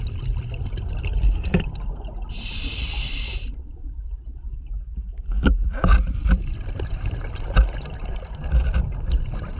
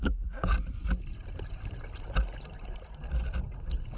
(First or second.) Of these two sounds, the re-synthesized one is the first